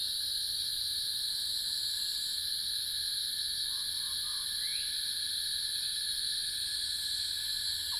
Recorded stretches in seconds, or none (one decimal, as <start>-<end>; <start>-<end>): 0.0-8.0